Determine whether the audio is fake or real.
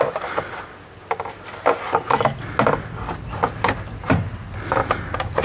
real